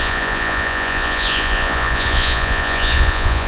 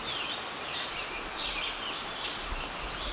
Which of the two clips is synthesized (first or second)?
first